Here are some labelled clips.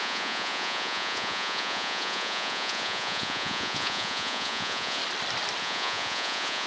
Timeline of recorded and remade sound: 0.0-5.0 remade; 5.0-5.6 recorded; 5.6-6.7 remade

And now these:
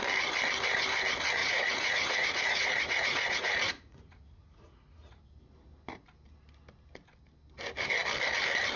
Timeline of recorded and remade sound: 0.0-1.4 recorded; 1.4-5.2 remade; 5.2-8.8 recorded

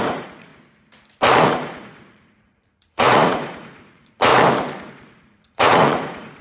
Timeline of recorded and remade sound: 0.0-0.5 remade; 0.5-1.4 recorded; 1.4-4.3 remade; 4.3-4.9 recorded; 4.9-6.4 remade

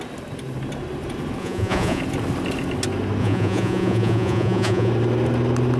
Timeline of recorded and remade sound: 0.0-1.4 recorded; 1.4-2.0 remade; 2.0-3.2 recorded; 3.2-4.9 remade; 4.9-5.8 recorded

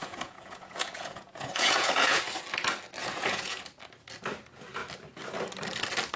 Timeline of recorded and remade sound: 0.0-2.2 remade; 2.2-3.0 recorded; 3.0-3.6 remade; 3.6-6.2 recorded

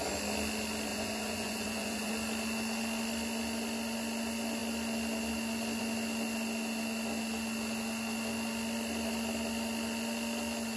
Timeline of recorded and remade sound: 0.0-0.9 recorded; 0.9-2.1 remade; 2.1-10.8 recorded